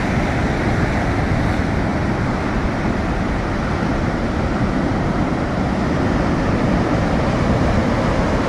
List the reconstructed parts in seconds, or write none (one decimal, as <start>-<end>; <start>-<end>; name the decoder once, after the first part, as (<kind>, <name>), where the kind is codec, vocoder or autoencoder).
1.9-6.7 (vocoder, BigVGAN v2)